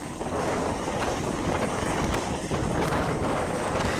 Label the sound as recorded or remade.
remade